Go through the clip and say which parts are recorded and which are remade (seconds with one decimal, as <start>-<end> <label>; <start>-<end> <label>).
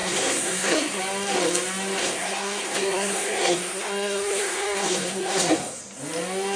0.0-1.0 remade; 1.0-2.0 recorded; 2.0-5.8 remade; 5.8-6.6 recorded